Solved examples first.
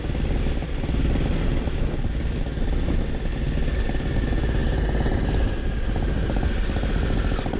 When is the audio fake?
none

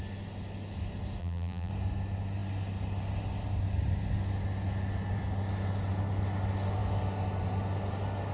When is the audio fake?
1.2-1.7 (vocoder, BigVGAN v2)